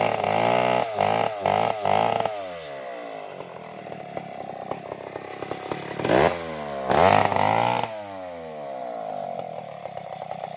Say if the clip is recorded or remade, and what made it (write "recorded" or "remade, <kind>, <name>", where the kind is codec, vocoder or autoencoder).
recorded